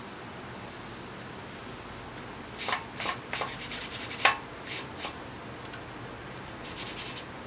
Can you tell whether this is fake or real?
real